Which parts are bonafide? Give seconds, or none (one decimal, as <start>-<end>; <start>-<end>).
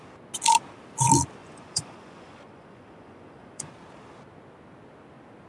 0.0-1.4; 3.7-5.5